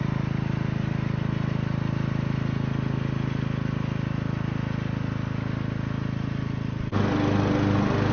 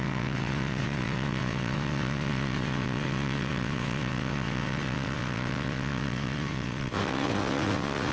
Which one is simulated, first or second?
second